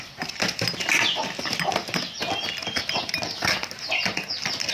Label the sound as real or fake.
real